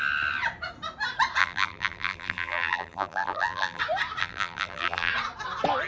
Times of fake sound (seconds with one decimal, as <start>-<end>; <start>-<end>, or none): 1.4-3.8; 4.2-5.1